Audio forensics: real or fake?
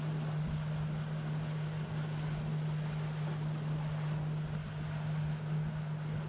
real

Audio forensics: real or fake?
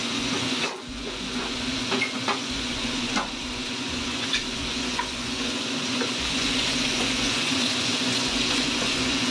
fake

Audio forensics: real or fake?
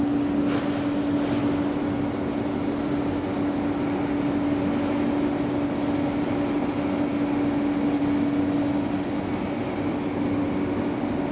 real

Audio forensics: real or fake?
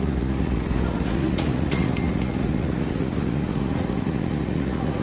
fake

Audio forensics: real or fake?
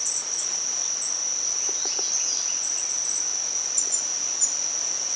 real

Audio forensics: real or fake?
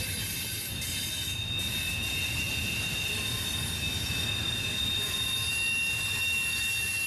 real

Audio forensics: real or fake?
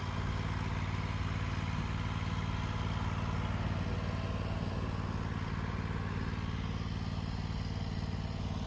real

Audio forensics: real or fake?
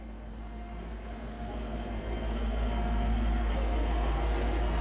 fake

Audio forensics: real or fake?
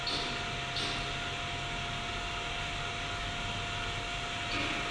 real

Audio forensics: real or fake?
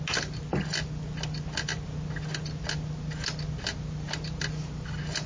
real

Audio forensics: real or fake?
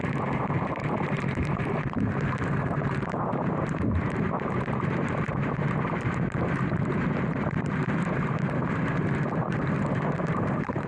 fake